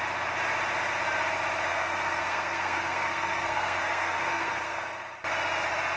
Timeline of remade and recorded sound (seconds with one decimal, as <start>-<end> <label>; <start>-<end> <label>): 0.0-1.7 recorded; 1.7-4.8 remade; 4.8-6.0 recorded